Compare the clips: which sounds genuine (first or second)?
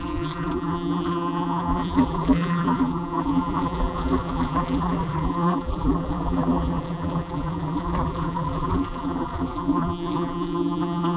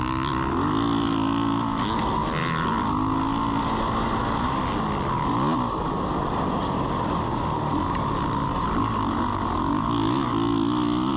second